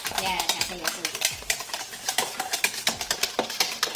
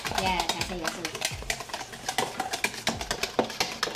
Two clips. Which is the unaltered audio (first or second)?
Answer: second